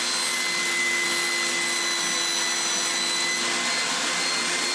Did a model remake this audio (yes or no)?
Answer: no